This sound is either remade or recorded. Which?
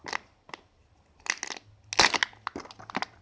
recorded